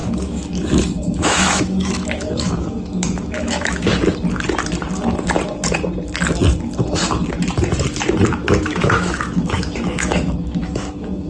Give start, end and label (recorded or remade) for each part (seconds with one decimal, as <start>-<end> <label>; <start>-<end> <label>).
0.0-3.9 remade; 3.9-8.3 recorded; 8.3-11.3 remade

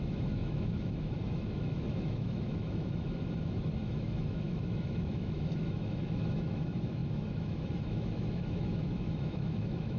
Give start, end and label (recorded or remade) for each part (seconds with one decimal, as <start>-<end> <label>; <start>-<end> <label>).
0.0-10.0 remade

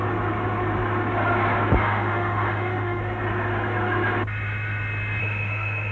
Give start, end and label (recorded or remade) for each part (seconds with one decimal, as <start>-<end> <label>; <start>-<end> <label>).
0.0-1.8 recorded; 1.8-3.0 remade; 3.0-5.2 recorded; 5.2-5.9 remade

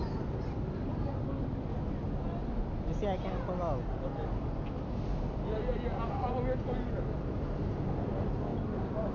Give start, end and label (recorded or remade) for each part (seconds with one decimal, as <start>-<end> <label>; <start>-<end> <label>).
0.0-9.1 recorded

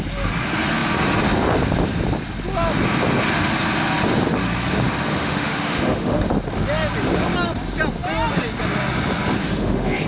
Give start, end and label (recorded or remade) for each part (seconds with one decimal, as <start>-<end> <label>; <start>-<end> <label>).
0.0-5.1 recorded; 5.1-6.3 remade; 6.3-9.4 recorded; 9.4-10.1 remade

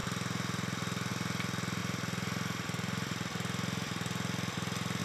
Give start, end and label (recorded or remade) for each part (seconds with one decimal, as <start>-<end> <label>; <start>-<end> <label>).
0.0-5.0 recorded

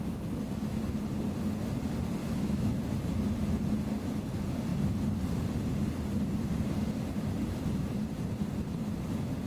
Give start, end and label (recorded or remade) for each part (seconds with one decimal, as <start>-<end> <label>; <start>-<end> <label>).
0.0-2.2 recorded; 2.2-2.7 remade; 2.7-9.5 recorded